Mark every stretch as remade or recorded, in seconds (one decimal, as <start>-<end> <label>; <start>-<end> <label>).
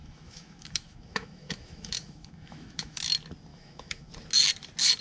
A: 0.0-3.0 remade; 3.0-3.5 recorded; 3.5-4.1 remade; 4.1-5.0 recorded